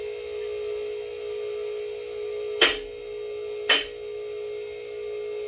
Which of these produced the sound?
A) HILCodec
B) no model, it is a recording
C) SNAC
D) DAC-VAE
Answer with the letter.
B